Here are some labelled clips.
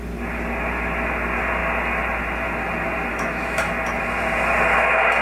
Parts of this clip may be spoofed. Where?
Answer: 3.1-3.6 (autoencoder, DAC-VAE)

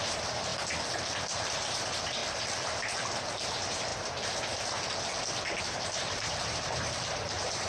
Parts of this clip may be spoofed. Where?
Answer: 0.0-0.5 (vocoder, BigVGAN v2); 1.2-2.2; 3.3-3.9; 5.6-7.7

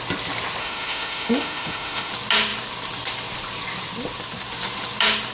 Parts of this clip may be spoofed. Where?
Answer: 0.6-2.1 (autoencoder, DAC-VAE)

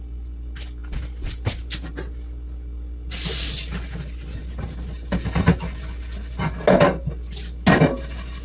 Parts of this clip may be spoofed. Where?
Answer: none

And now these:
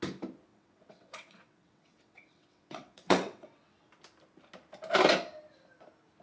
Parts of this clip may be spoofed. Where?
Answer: 0.5-3.9 (vocoder, WaveNeXt)

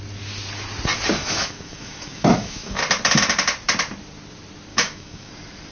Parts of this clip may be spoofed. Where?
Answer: 1.2-2.8 (autoencoder, DAC-VAE); 4.7-5.3

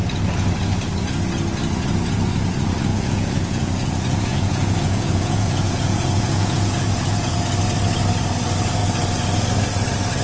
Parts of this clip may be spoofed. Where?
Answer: 2.9-7.4 (vocoder, Vocos)

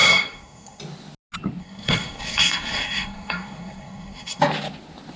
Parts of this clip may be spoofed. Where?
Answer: 0.0-0.8 (codec, SNAC); 1.6-4.4